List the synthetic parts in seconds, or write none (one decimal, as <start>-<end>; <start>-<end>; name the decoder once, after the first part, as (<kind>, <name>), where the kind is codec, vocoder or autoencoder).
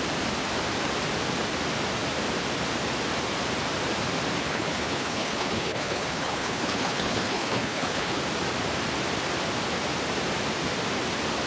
4.4-8.2 (codec, HILCodec)